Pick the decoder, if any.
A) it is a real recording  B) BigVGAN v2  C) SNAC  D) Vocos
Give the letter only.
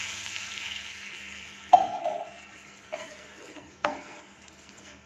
C